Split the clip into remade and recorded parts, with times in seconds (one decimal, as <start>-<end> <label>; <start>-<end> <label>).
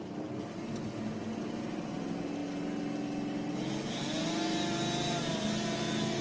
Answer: 0.0-6.2 recorded